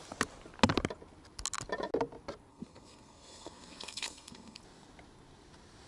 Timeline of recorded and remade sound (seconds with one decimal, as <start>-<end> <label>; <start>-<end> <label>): 0.0-2.5 recorded; 2.5-4.6 remade; 4.6-5.9 recorded